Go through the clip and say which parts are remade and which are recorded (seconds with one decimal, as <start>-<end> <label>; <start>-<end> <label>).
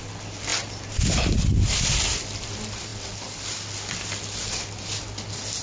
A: 0.0-5.6 recorded